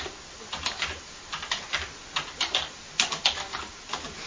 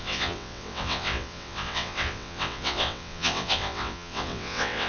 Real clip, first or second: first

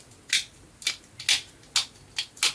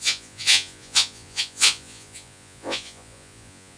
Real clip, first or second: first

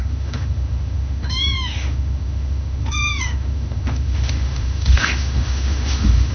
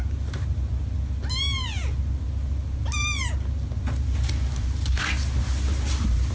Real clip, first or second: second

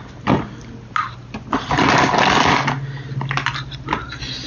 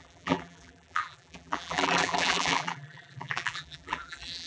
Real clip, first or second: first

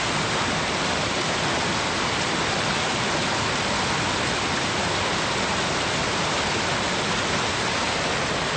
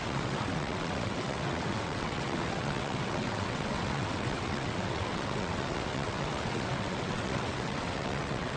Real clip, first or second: first